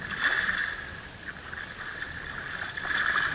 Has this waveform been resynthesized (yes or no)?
no